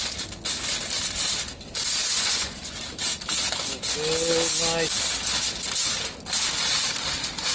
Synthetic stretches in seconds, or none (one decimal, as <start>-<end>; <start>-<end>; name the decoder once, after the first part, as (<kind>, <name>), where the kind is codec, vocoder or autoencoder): 2.0-2.8 (vocoder, Vocos)